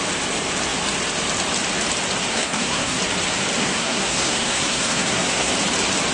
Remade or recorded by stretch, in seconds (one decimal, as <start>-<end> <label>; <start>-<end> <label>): 0.0-2.3 recorded; 2.3-3.0 remade; 3.0-3.6 recorded; 3.6-5.5 remade; 5.5-6.1 recorded